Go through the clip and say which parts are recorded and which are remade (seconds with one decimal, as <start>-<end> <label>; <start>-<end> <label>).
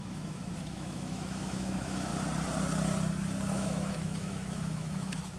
0.0-2.1 remade; 2.1-3.5 recorded; 3.5-5.4 remade